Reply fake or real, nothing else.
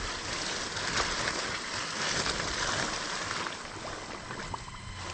real